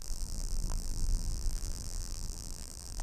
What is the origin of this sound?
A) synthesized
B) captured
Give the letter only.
A